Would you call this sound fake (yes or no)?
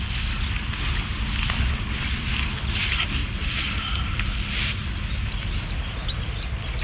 no